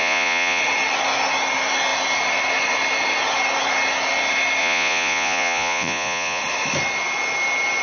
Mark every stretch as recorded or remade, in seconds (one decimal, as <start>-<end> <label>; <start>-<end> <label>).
0.0-0.6 remade; 0.6-4.6 recorded; 4.6-6.4 remade; 6.4-7.8 recorded